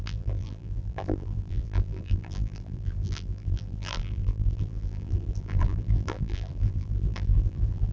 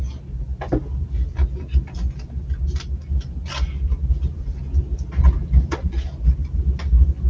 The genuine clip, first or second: second